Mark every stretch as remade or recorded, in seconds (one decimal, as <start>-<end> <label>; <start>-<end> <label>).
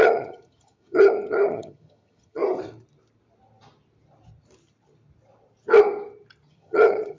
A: 0.0-2.4 remade; 2.4-6.5 recorded; 6.5-7.2 remade